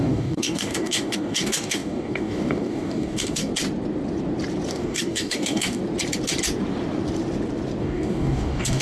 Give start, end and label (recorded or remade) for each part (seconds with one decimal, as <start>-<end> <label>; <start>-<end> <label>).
0.0-3.5 remade; 3.5-4.7 recorded; 4.7-5.8 remade; 5.8-7.8 recorded; 7.8-8.8 remade